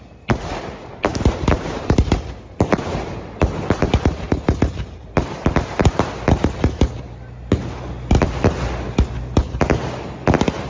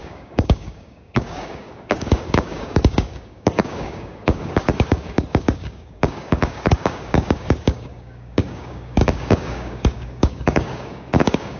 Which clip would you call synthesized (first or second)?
second